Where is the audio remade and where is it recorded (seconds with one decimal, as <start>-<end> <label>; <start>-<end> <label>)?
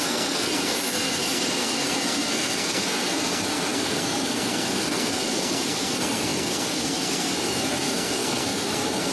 0.0-9.1 remade